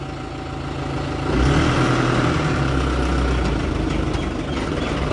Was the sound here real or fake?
real